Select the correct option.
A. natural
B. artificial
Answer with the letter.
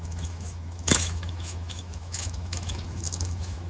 B